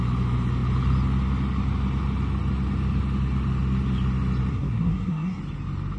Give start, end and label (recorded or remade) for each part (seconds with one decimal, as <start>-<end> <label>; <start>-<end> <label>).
0.0-4.5 recorded; 4.5-5.4 remade; 5.4-6.0 recorded